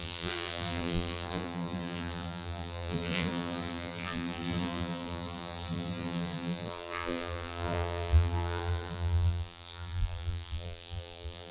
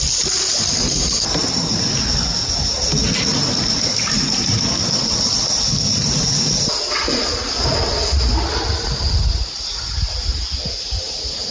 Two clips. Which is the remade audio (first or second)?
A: first